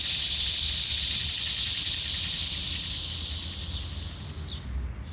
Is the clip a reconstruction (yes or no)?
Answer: no